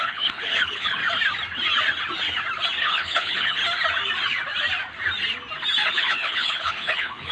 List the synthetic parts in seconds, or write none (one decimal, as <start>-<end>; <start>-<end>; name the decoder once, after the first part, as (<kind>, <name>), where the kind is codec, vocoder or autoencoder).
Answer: 0.0-1.0 (codec, HILCodec); 2.8-3.6; 5.9-7.3